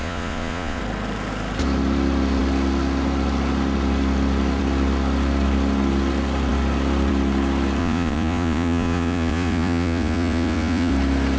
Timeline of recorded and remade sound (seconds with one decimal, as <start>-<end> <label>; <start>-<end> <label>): 0.0-0.8 remade; 0.8-7.8 recorded; 7.8-10.9 remade; 10.9-11.4 recorded